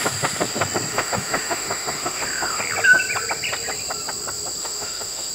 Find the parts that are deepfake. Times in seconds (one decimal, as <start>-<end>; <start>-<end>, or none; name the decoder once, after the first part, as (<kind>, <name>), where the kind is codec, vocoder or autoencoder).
0.9-2.6 (autoencoder, DAC-VAE); 4.6-5.3